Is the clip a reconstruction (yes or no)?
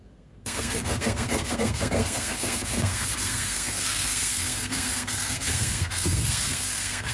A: yes